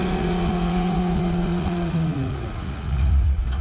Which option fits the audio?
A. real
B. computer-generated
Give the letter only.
B